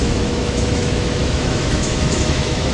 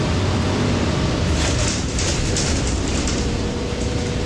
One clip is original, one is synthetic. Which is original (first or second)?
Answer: second